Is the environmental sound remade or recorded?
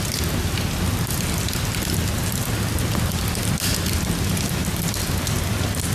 recorded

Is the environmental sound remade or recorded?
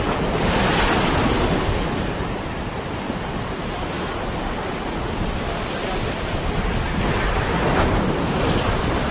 recorded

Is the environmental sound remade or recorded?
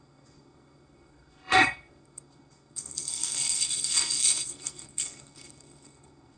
remade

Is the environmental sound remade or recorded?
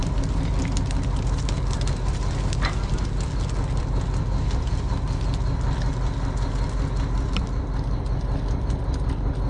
recorded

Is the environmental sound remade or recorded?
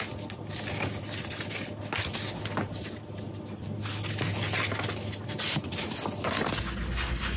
recorded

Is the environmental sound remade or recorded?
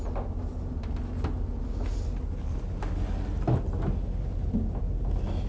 recorded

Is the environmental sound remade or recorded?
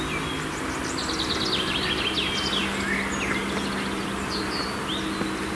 recorded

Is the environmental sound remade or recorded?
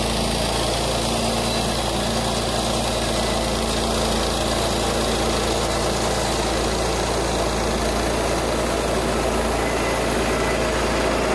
recorded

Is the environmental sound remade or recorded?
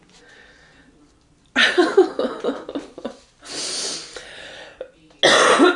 recorded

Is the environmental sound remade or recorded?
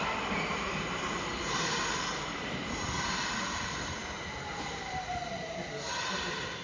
remade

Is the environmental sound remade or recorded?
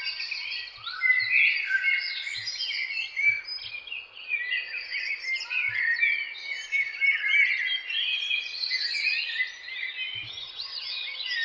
recorded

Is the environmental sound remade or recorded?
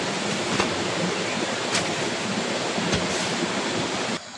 recorded